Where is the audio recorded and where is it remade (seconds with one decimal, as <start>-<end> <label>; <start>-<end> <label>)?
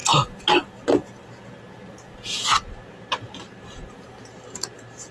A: 0.0-2.7 recorded; 2.7-5.1 remade